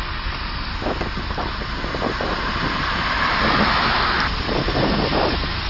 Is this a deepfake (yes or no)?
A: yes